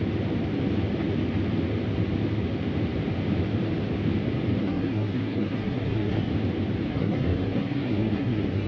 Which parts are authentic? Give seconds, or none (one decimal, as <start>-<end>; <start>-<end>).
0.0-4.6; 6.3-6.9